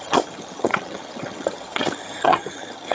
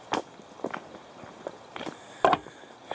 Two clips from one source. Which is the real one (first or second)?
second